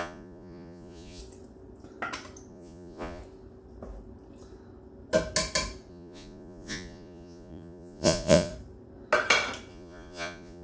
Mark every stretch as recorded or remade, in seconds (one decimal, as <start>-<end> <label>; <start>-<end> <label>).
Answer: 0.0-1.2 remade; 1.2-2.5 recorded; 2.5-3.2 remade; 3.2-5.9 recorded; 5.9-8.5 remade; 8.5-9.7 recorded; 9.7-10.6 remade